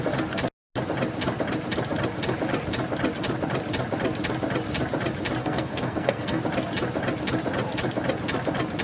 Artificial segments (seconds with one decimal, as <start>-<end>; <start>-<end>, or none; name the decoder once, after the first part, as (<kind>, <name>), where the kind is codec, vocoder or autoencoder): 5.4-6.4 (codec, SNAC)